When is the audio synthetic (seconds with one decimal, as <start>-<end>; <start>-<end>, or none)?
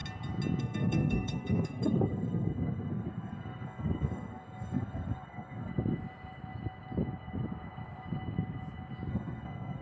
0.6-5.7; 9.1-9.8